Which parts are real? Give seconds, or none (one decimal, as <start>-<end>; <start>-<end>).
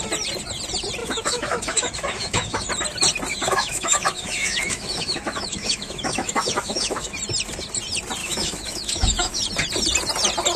0.0-1.0; 2.7-3.3; 7.1-8.2; 9.4-10.6